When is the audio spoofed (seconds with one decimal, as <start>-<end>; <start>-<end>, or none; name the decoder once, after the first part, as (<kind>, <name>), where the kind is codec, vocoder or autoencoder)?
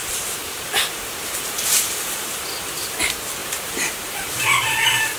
0.0-2.9 (vocoder, BigVGAN v2); 3.4-4.4